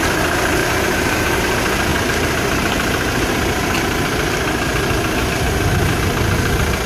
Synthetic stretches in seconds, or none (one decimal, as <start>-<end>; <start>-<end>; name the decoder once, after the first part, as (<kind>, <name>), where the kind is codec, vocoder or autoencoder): 0.6-1.4 (vocoder, BigVGAN v2); 1.9-3.3

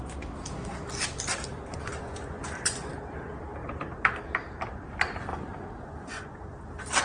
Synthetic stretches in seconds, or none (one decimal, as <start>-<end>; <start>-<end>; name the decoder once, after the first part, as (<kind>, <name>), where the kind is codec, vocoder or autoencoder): 1.5-2.9 (vocoder, Vocos); 5.3-6.5

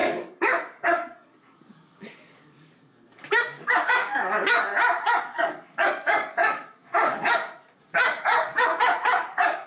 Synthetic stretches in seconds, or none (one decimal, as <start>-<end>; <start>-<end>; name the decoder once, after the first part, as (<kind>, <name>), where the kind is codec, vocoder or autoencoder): 0.0-4.7 (codec, DAC); 5.2-9.7

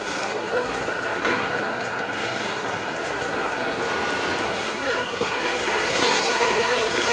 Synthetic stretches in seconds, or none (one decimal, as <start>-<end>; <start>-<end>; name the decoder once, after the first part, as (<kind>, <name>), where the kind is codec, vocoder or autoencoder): 0.0-3.8 (codec, SNAC); 4.4-7.1

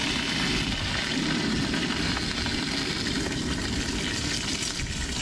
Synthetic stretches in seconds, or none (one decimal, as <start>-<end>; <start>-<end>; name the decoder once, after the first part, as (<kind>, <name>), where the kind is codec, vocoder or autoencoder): none

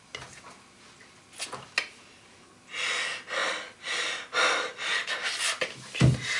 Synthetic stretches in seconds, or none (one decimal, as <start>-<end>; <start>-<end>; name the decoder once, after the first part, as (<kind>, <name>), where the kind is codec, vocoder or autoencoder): none

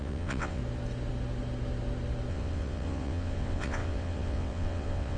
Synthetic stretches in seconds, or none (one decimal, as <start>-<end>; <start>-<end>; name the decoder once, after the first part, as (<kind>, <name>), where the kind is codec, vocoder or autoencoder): 0.0-0.6 (vocoder, WaveNeXt); 2.3-5.2